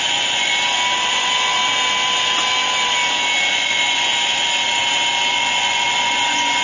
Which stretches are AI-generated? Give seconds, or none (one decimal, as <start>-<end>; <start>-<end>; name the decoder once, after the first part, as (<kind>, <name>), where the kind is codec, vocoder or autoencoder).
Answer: 0.0-0.5 (vocoder, Vocos); 1.0-1.6; 3.5-4.1; 5.3-6.6